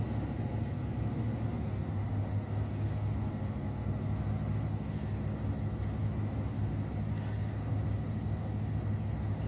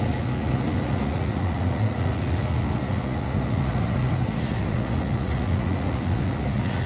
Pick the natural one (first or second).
first